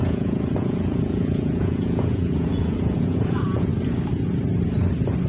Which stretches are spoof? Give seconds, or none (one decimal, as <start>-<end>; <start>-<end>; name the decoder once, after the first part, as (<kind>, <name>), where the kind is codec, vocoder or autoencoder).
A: 0.0-3.7 (vocoder, Vocos)